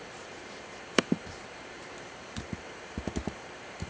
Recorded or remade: remade